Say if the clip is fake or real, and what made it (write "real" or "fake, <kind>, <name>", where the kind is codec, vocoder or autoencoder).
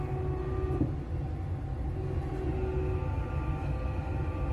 real